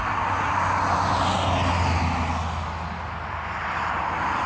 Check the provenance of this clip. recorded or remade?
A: recorded